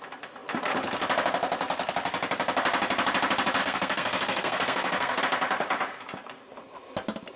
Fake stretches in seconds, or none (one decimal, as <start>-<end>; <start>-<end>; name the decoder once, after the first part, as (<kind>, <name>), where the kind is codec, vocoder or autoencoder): 3.6-5.2 (codec, SNAC)